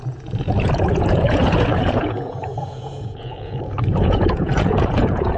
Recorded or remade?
remade